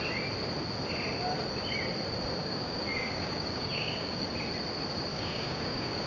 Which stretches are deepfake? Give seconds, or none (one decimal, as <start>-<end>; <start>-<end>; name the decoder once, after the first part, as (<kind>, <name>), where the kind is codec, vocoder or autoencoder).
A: 2.4-4.3 (codec, DAC); 5.1-6.1